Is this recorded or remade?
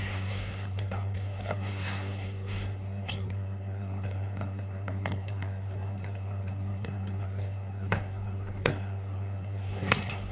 remade